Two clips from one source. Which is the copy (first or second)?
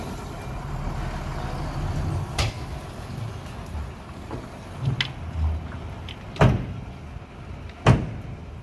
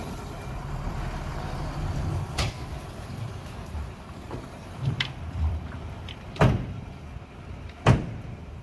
second